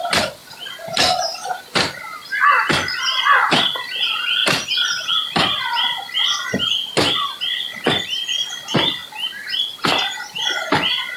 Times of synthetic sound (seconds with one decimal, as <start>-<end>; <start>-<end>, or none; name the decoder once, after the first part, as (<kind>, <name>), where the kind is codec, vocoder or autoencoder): 0.4-1.6 (vocoder, BigVGAN v2)